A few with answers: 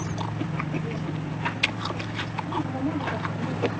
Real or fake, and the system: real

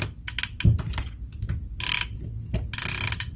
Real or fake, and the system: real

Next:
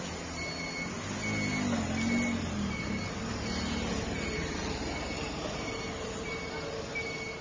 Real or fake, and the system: real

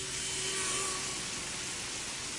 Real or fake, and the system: real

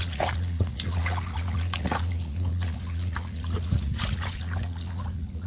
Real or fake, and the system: fake, vocoder, Vocos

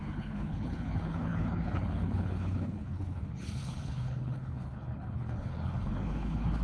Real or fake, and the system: fake, codec, HILCodec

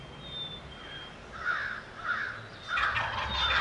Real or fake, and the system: real